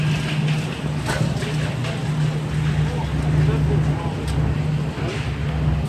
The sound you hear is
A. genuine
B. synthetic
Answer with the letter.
A